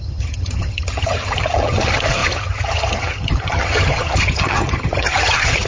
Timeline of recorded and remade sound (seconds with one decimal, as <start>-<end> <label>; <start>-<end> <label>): 0.0-5.7 remade